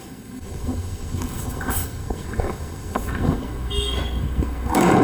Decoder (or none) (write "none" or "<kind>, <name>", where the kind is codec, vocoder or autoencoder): codec, SNAC